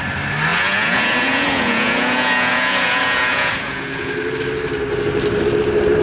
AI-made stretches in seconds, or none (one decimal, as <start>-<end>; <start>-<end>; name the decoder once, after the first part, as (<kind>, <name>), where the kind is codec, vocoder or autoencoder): 0.5-4.1 (vocoder, Vocos)